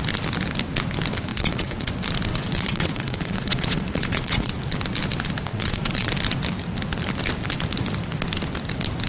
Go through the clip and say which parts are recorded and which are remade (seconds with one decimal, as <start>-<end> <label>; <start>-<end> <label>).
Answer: 0.0-1.3 recorded; 1.3-1.9 remade; 1.9-2.3 recorded; 2.3-4.5 remade; 4.5-5.5 recorded; 5.5-6.1 remade; 6.1-9.1 recorded